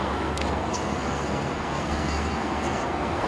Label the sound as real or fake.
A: fake